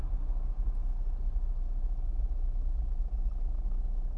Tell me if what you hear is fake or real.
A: real